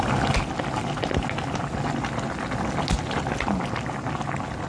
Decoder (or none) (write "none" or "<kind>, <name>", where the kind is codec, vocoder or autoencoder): none